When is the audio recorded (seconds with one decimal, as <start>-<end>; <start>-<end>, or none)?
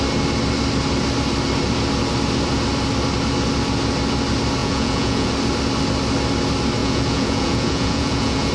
0.0-4.6; 5.3-6.8